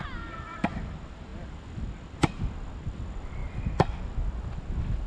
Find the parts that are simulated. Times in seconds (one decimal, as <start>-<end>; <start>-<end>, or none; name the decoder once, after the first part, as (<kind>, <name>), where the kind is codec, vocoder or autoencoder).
none